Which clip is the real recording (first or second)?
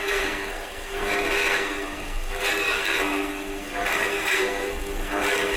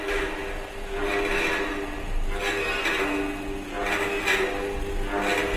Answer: second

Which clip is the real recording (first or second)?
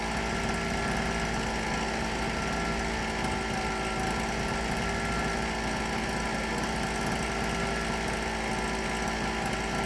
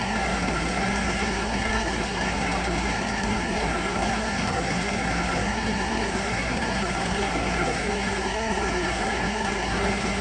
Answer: first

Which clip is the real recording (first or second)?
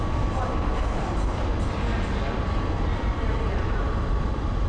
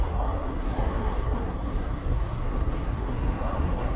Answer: first